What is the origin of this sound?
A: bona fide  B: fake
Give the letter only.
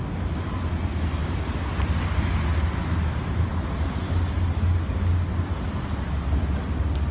A